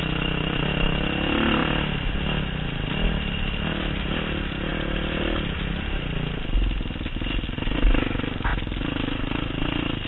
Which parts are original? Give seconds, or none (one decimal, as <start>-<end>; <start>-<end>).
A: 0.0-10.1